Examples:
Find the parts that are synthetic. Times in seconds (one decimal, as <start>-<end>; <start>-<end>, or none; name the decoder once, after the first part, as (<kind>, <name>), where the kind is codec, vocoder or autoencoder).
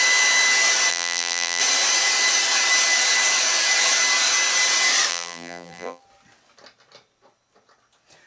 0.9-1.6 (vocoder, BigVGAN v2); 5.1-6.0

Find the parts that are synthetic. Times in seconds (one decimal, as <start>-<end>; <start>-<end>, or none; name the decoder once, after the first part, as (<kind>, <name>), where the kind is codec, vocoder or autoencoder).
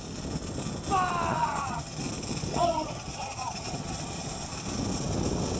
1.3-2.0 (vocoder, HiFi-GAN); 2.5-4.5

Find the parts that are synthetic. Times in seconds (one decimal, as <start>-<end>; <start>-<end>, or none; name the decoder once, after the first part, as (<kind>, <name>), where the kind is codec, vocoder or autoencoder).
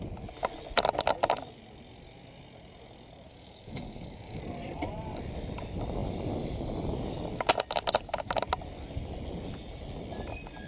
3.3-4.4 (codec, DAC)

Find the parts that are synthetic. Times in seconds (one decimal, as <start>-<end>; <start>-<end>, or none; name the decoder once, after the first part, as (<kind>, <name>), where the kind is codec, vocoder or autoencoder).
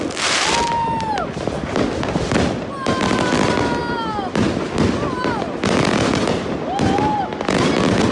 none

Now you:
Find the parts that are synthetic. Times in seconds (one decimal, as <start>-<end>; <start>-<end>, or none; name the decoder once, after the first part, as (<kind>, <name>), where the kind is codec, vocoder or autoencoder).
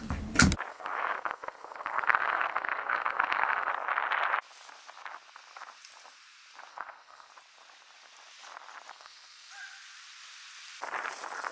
0.7-3.7 (codec, SNAC); 6.7-7.3; 8.9-9.5